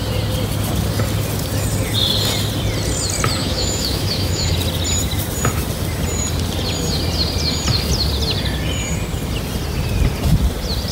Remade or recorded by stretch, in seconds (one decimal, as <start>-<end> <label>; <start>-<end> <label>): 0.0-3.4 recorded; 3.4-4.5 remade; 4.5-10.9 recorded